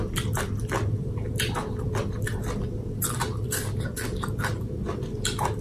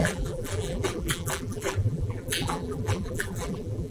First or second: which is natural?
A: first